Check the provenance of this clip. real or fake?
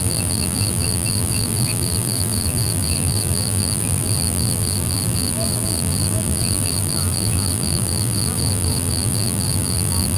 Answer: fake